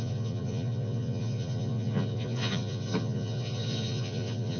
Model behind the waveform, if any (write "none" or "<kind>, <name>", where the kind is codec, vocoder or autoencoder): vocoder, Vocos